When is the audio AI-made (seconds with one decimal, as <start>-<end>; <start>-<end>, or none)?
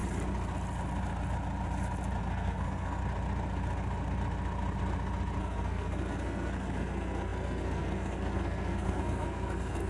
2.2-3.0; 5.4-9.9